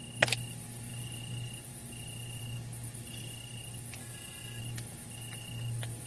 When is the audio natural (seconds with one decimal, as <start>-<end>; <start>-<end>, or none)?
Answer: 0.0-4.0; 4.6-6.1